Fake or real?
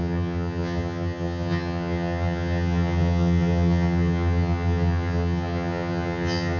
fake